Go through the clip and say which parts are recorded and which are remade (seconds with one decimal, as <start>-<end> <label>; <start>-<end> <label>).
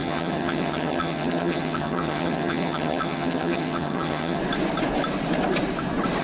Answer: 0.0-4.4 remade; 4.4-6.2 recorded